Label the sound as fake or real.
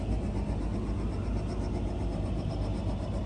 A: real